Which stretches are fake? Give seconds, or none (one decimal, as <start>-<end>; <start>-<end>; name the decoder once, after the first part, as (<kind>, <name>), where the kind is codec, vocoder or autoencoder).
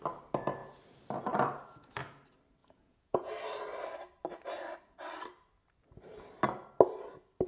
2.6-3.3 (vocoder, Vocos)